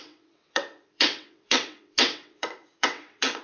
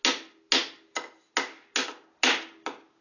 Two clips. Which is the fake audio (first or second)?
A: first